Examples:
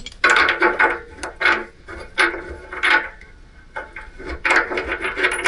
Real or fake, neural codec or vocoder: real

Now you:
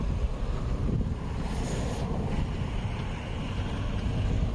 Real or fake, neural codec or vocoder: real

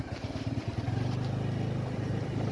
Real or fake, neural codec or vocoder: real